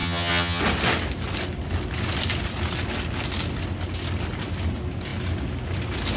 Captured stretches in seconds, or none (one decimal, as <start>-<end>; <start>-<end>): 0.6-6.2